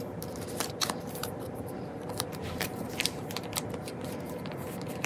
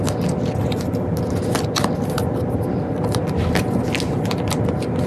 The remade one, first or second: first